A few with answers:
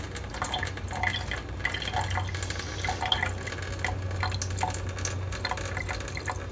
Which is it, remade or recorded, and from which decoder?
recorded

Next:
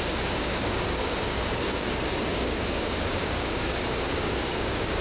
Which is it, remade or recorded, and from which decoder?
remade, codec, DAC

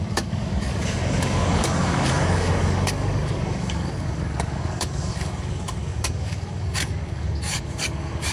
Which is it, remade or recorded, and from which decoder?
remade, codec, DAC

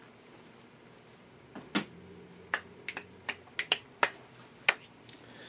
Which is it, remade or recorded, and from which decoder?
recorded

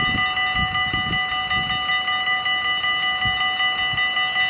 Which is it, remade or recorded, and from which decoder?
recorded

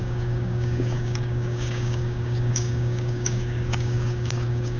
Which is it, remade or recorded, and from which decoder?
remade, codec, DAC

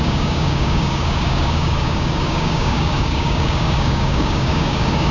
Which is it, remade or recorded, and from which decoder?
remade, codec, DAC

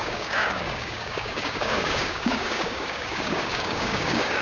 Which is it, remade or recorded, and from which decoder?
remade, codec, DAC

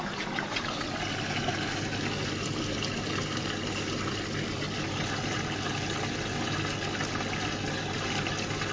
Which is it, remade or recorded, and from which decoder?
recorded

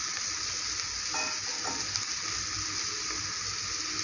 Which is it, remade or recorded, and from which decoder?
recorded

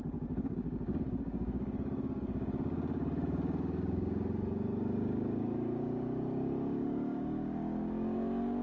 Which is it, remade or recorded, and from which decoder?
remade, codec, DAC